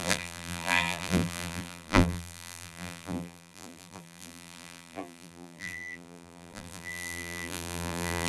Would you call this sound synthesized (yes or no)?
yes